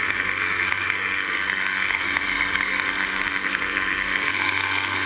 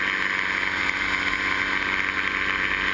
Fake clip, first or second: first